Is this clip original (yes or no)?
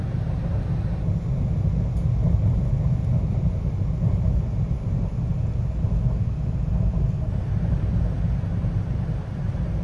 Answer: yes